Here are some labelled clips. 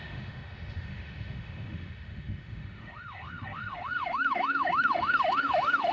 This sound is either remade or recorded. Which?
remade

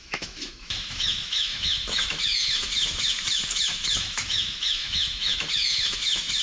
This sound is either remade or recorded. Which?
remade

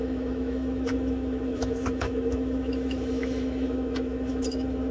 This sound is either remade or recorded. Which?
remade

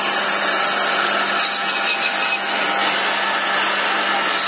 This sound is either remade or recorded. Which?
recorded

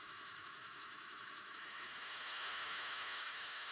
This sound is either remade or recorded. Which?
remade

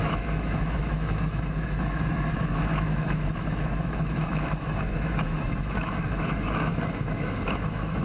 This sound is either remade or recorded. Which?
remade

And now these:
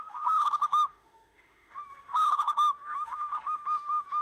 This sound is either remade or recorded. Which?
remade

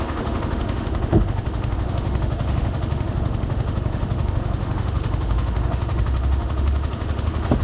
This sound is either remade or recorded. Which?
remade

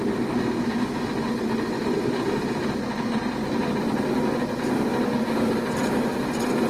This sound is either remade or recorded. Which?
recorded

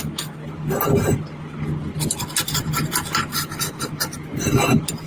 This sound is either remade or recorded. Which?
recorded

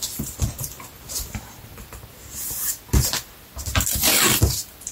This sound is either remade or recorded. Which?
recorded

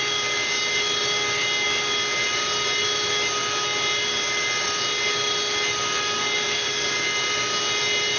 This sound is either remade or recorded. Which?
recorded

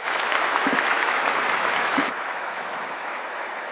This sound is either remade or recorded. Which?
remade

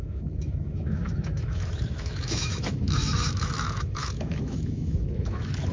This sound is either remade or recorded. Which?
remade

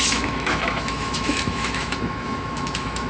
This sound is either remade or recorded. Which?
remade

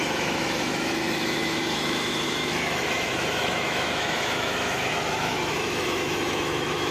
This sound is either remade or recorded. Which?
remade